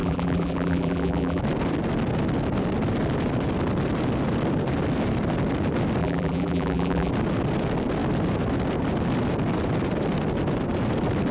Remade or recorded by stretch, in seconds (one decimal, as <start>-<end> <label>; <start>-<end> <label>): 0.0-1.4 remade; 1.4-6.0 recorded; 6.0-7.1 remade; 7.1-11.3 recorded